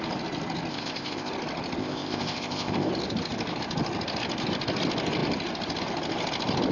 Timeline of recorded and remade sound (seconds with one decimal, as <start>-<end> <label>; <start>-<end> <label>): 0.0-0.7 recorded; 0.7-1.3 remade; 1.3-1.8 recorded; 1.8-2.9 remade; 2.9-6.7 recorded